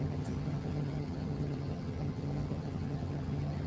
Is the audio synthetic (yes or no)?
yes